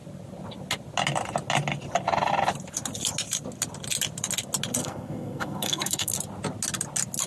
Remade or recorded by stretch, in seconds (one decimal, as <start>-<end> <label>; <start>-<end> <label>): 0.0-4.8 recorded; 4.8-6.1 remade; 6.1-7.3 recorded

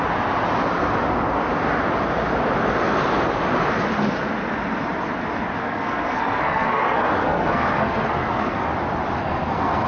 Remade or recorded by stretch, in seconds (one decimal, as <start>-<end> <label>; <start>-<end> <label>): 0.0-5.6 recorded; 5.6-8.7 remade; 8.7-9.2 recorded; 9.2-9.9 remade

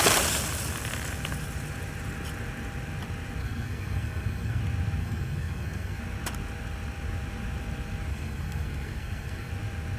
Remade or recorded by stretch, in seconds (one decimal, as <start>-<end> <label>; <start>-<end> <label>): 0.0-3.4 recorded; 3.4-4.6 remade; 4.6-5.0 recorded; 5.0-6.0 remade; 6.0-8.1 recorded; 8.1-9.5 remade; 9.5-10.0 recorded